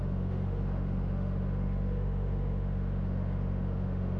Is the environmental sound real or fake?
fake